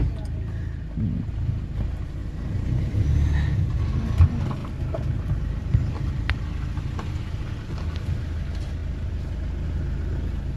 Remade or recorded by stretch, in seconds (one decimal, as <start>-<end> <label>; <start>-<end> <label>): 0.0-2.2 recorded; 2.2-3.8 remade; 3.8-4.6 recorded; 4.6-6.4 remade; 6.4-10.6 recorded